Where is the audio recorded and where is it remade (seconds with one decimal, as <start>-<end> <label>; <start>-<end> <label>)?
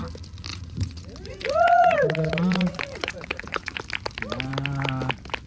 0.0-0.5 recorded; 0.5-3.8 remade; 3.8-5.5 recorded